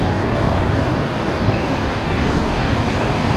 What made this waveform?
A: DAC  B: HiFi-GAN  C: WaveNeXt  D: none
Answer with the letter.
A